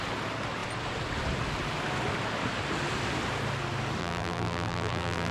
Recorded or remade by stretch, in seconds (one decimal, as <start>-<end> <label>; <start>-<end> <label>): 0.0-4.0 recorded; 4.0-5.3 remade